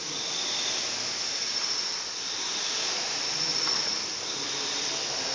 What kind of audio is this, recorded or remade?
recorded